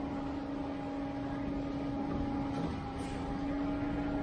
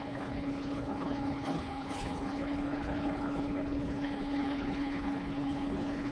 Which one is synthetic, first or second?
second